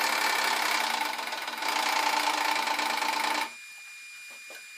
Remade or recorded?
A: recorded